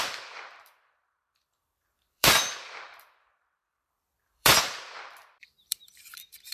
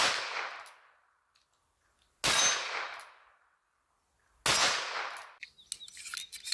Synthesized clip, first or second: first